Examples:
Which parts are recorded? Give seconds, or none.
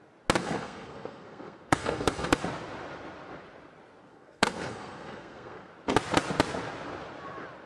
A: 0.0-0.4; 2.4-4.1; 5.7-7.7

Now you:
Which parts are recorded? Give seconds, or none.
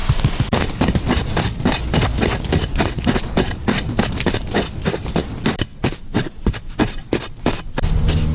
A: 0.0-8.3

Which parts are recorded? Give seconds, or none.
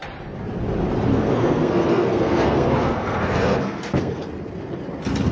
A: 0.0-1.1; 4.3-5.3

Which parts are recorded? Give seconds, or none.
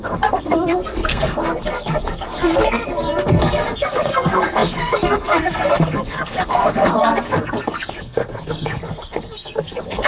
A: none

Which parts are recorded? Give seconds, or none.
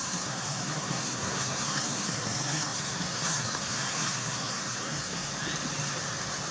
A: 5.3-6.5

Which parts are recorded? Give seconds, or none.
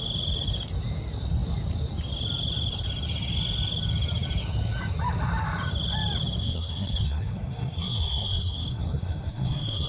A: 0.0-6.4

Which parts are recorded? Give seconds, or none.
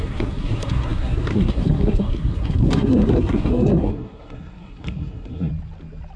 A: 5.5-6.2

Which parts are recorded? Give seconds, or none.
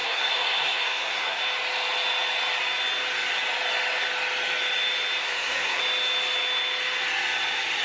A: 1.4-5.2; 5.8-7.8